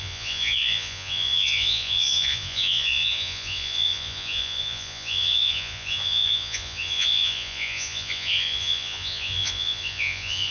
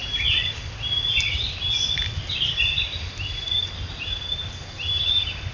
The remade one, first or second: first